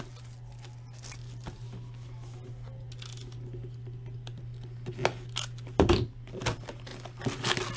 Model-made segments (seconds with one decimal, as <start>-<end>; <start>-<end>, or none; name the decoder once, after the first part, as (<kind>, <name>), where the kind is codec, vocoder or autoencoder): none